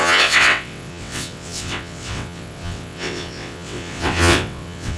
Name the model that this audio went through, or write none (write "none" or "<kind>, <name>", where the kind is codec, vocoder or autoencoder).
vocoder, WaveNeXt